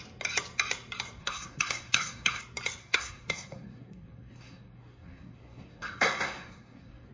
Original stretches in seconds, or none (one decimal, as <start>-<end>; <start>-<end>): 0.0-1.2; 2.4-2.8